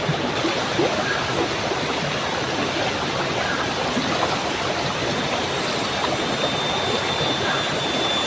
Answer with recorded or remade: recorded